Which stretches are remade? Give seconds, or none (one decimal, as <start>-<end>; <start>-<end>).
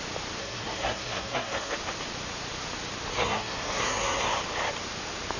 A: 0.4-1.7; 3.1-4.3